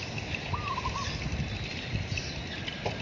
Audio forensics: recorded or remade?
recorded